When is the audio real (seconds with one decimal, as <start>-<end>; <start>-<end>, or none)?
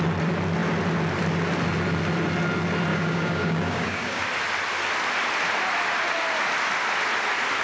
0.0-2.9; 4.2-7.6